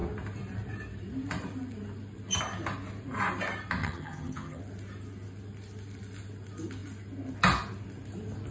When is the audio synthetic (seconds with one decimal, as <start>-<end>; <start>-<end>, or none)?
3.8-4.6